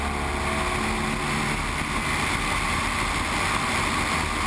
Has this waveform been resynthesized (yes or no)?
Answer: no